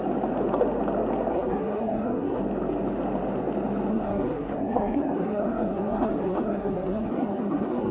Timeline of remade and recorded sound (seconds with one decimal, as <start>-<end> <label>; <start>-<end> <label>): 0.0-1.3 recorded; 1.3-2.4 remade; 2.4-3.9 recorded; 3.9-7.9 remade

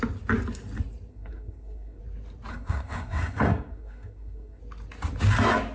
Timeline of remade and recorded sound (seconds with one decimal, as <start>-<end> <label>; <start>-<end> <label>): 0.0-1.1 recorded; 1.1-2.0 remade; 2.0-2.5 recorded; 2.5-4.6 remade; 4.6-5.7 recorded

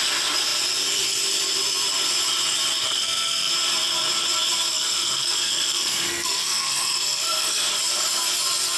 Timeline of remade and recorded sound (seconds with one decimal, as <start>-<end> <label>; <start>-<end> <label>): 0.0-2.8 recorded; 2.8-3.5 remade; 3.5-4.7 recorded; 4.7-7.8 remade; 7.8-8.8 recorded

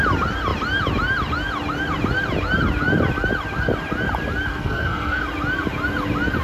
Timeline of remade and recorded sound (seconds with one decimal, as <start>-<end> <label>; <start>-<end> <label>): 0.0-4.5 recorded; 4.5-5.2 remade; 5.2-6.4 recorded

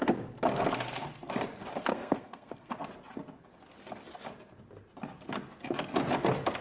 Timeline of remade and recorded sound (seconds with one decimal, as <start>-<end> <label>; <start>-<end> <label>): 0.0-1.9 recorded; 1.9-2.7 remade; 2.7-6.6 recorded

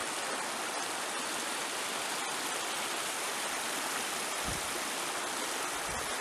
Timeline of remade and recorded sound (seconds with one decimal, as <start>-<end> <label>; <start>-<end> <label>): 0.0-6.2 recorded

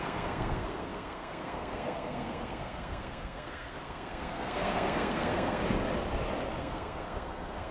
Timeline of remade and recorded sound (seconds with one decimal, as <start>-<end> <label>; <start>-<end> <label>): 0.0-5.6 remade; 5.6-6.6 recorded; 6.6-7.7 remade